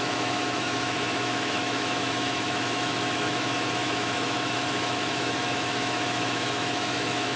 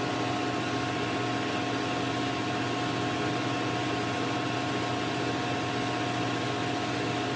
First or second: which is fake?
first